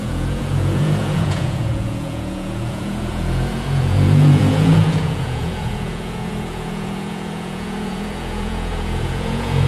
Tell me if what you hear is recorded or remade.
remade